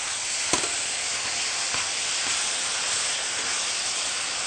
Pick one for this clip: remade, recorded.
recorded